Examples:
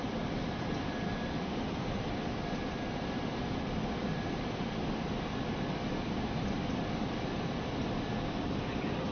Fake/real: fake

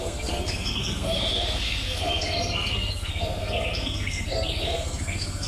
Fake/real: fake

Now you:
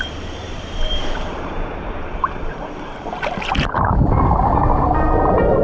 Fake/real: fake